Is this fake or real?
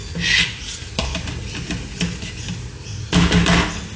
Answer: real